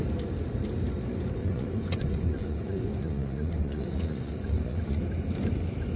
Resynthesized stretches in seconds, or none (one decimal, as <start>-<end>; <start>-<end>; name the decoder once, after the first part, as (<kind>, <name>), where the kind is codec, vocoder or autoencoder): 1.4-5.0 (vocoder, Vocos)